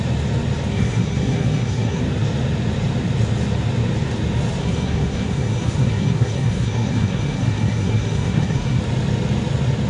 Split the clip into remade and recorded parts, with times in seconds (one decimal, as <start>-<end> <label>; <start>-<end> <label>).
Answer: 0.0-0.7 recorded; 0.7-2.0 remade; 2.0-4.6 recorded; 4.6-8.8 remade; 8.8-9.9 recorded